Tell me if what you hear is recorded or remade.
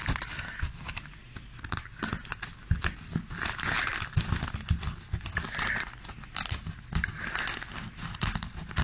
recorded